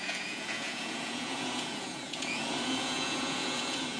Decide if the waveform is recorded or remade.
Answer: remade